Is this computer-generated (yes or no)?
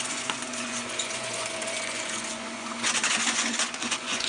yes